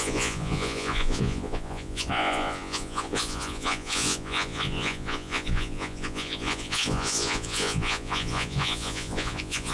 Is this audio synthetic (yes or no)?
yes